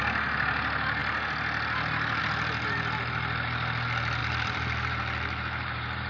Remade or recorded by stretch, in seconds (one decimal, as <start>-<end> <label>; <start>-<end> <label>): 0.0-4.2 recorded; 4.2-6.1 remade